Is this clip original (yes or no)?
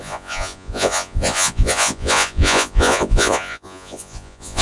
no